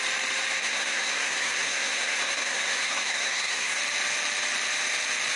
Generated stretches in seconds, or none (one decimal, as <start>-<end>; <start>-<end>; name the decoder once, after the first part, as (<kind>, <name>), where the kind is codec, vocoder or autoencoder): 0.6-3.8 (codec, SNAC)